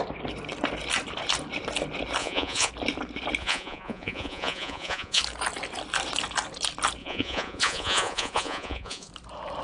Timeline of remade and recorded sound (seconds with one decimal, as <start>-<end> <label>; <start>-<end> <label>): 0.0-2.2 recorded; 2.2-2.7 remade; 2.7-3.4 recorded; 3.4-5.2 remade; 5.2-7.0 recorded; 7.0-9.1 remade; 9.1-9.6 recorded